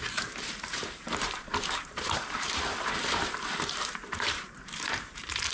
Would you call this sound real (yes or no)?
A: no